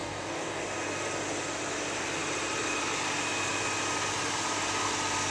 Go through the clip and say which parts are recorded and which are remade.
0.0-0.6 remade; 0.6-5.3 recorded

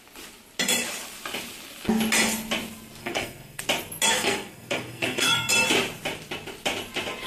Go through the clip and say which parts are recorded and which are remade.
0.0-3.0 recorded; 3.0-3.6 remade; 3.6-4.1 recorded; 4.1-5.5 remade; 5.5-7.3 recorded

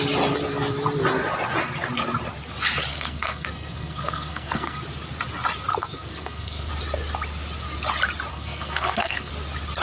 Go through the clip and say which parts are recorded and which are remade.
0.0-2.9 recorded; 2.9-4.8 remade; 4.8-5.7 recorded; 5.7-6.7 remade; 6.7-8.3 recorded; 8.3-9.3 remade; 9.3-9.8 recorded

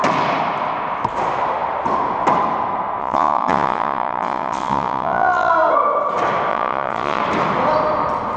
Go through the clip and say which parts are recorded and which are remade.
0.0-3.0 recorded; 3.0-5.5 remade; 5.5-6.5 recorded; 6.5-7.2 remade; 7.2-8.4 recorded

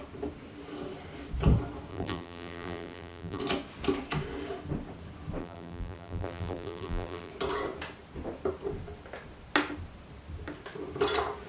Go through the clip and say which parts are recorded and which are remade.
0.0-1.9 recorded; 1.9-3.4 remade; 3.4-5.4 recorded; 5.4-7.3 remade; 7.3-11.5 recorded

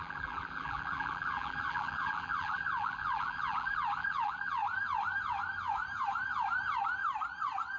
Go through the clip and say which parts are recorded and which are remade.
0.0-4.6 remade; 4.6-7.8 recorded

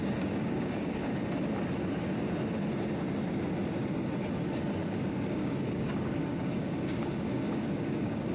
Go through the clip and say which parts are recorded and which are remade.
0.0-1.1 remade; 1.1-4.8 recorded; 4.8-8.3 remade

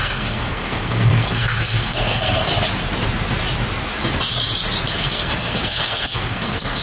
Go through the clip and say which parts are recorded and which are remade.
0.0-2.5 remade; 2.5-4.9 recorded; 4.9-6.8 remade